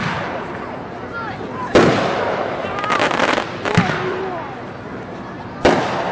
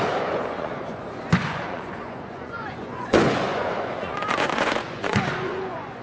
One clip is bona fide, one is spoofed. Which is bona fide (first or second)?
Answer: first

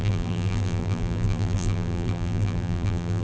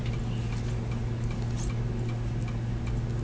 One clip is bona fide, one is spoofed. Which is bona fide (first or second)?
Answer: second